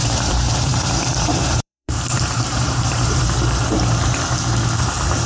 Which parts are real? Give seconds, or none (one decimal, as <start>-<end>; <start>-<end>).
3.2-5.3